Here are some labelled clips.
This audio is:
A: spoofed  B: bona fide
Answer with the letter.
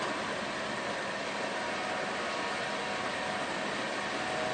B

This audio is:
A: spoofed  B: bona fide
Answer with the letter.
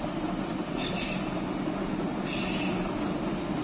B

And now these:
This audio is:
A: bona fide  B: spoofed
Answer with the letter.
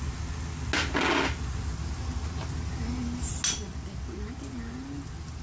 A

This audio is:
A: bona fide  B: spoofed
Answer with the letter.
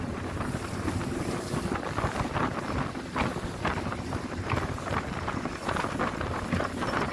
A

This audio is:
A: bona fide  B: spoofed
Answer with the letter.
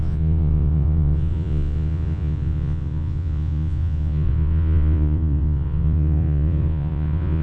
B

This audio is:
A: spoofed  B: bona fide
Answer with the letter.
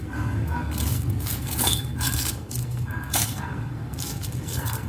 A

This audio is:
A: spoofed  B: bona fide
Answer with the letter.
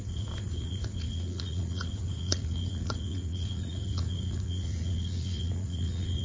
A